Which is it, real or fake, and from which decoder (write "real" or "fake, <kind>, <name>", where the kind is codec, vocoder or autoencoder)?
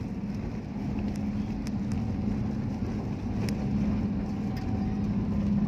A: real